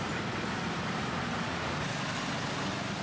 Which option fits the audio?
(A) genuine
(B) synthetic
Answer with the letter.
A